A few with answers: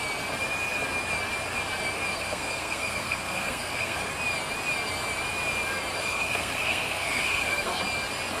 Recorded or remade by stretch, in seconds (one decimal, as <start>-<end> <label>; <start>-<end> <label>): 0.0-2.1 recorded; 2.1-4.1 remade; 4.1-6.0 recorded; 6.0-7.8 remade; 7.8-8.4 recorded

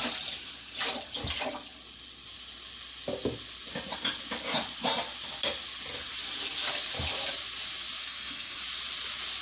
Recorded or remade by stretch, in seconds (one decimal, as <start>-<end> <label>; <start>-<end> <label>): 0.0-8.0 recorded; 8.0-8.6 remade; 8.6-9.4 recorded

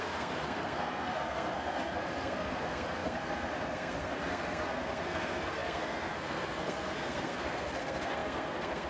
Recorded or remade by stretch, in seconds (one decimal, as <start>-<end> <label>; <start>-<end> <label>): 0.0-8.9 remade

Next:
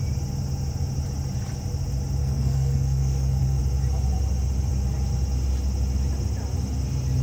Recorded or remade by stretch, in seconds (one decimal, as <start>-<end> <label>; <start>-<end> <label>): 0.0-2.2 recorded; 2.2-3.6 remade; 3.6-7.2 recorded

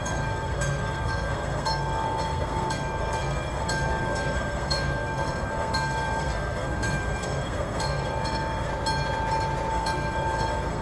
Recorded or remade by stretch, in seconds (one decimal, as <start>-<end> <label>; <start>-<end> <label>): 0.0-8.7 remade; 8.7-9.7 recorded; 9.7-10.8 remade